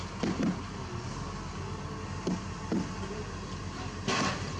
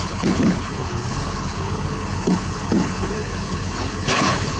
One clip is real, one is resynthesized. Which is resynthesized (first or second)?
second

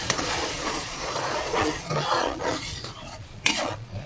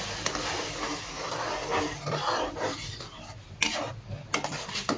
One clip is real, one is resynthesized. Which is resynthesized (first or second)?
first